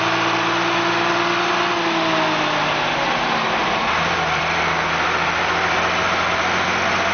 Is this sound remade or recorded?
recorded